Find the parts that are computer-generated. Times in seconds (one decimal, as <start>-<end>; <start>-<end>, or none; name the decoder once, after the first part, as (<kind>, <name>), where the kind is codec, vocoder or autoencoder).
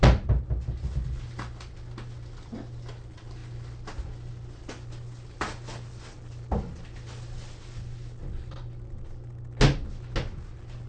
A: none